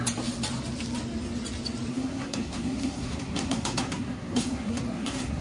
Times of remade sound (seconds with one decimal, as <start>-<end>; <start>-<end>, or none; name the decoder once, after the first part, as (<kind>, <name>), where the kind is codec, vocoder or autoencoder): 1.9-5.4 (codec, SNAC)